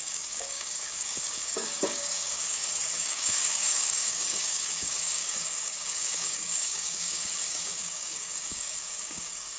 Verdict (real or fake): fake